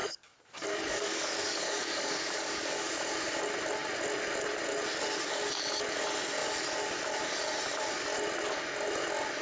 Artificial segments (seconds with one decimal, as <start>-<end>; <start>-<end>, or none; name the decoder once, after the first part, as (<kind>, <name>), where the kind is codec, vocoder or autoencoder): 0.0-2.9 (codec, DAC)